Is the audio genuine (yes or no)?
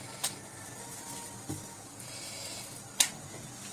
yes